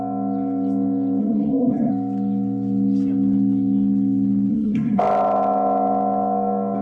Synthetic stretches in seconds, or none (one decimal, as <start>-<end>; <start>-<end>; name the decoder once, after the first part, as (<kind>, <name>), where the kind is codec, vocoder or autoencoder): 1.2-1.9 (codec, SNAC); 4.5-5.0